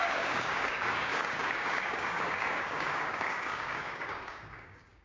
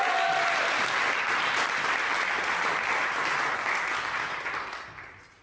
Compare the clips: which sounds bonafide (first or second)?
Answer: second